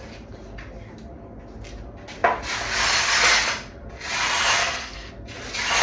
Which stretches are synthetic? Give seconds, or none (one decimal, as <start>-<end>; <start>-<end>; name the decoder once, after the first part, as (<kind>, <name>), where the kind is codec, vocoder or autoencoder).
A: 4.6-5.1 (codec, SNAC)